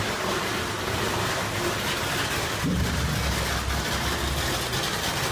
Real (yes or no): yes